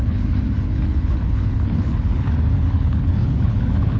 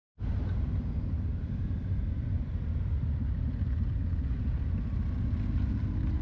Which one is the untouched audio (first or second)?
second